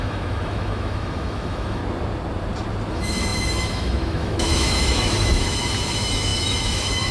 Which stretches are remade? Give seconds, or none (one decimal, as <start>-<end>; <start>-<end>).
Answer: 0.0-1.8; 2.9-7.1